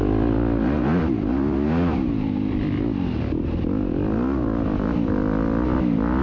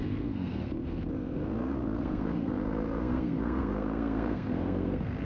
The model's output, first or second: second